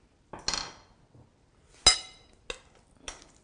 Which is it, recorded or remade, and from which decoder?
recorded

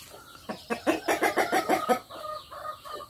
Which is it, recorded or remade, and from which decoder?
recorded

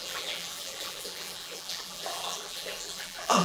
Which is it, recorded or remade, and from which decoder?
remade, vocoder, BigVGAN v2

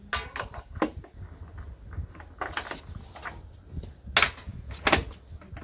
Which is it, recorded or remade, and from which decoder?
recorded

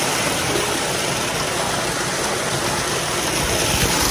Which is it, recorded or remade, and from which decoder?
recorded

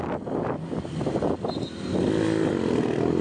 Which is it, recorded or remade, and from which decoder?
recorded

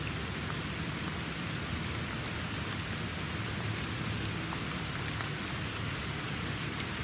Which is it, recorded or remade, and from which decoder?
remade, vocoder, BigVGAN v2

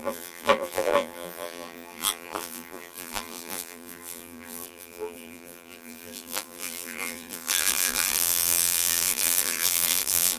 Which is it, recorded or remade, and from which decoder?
remade, vocoder, BigVGAN v2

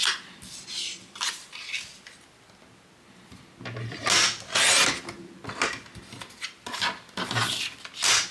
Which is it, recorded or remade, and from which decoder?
recorded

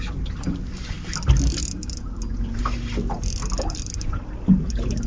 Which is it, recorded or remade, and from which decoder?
recorded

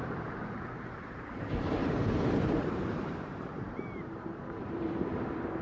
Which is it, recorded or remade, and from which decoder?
remade, vocoder, BigVGAN v2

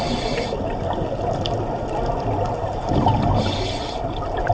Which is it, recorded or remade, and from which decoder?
recorded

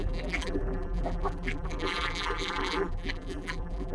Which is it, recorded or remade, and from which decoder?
remade, vocoder, BigVGAN v2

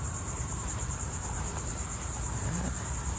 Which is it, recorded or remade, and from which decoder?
remade, vocoder, BigVGAN v2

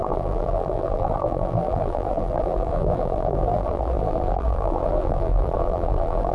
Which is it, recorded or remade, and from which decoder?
remade, vocoder, BigVGAN v2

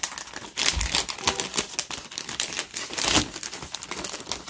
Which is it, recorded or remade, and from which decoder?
recorded